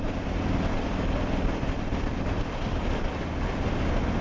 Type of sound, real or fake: real